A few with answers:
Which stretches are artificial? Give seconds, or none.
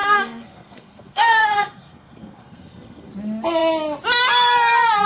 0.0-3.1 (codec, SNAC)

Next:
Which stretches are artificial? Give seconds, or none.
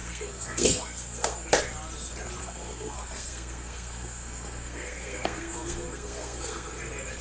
0.0-1.5 (codec, SNAC); 2.4-6.7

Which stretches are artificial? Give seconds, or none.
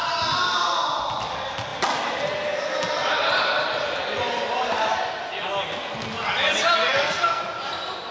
6.8-7.4 (codec, SNAC)